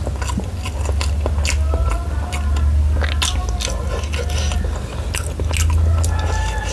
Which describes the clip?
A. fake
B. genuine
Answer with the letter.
B